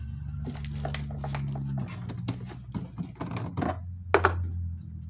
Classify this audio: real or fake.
real